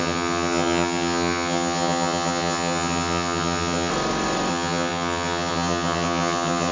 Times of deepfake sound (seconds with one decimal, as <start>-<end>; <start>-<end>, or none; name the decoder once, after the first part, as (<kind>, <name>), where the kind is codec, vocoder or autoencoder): 0.0-3.9 (vocoder, HiFi-GAN); 4.5-6.7